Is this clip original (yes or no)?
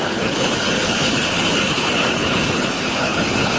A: no